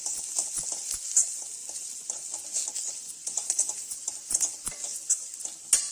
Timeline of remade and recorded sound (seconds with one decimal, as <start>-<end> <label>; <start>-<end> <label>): 0.0-5.9 recorded